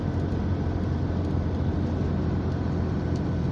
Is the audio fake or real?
real